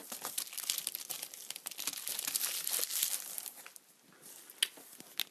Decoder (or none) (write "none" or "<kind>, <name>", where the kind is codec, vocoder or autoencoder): none